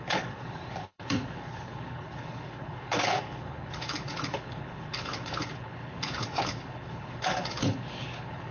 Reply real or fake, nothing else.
fake